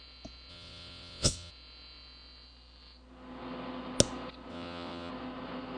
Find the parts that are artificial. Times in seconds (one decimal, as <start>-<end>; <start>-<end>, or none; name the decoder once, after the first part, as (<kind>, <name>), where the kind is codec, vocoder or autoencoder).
0.5-1.5 (vocoder, WaveNeXt); 4.5-5.1